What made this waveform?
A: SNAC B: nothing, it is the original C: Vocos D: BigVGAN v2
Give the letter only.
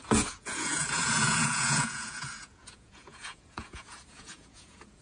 C